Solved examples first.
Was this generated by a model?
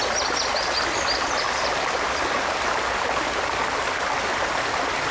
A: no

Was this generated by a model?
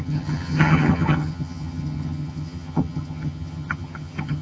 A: yes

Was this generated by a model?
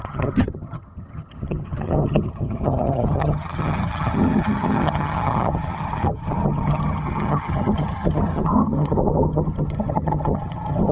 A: yes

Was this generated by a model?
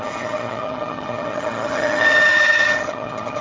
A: yes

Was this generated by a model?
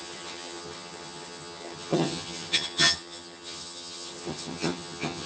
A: yes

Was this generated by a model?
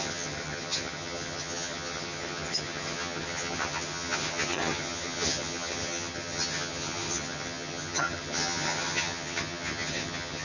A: yes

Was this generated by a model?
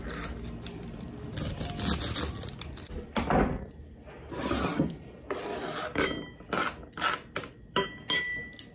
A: no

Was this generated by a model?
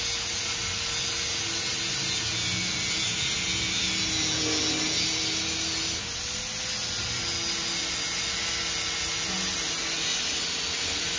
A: no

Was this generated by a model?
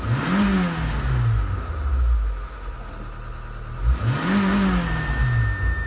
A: no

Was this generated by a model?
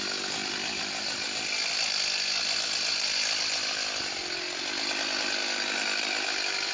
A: no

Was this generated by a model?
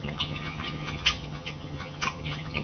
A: yes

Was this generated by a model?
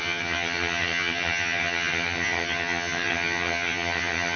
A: yes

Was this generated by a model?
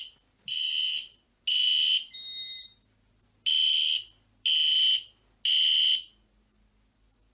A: no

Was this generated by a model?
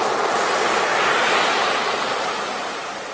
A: no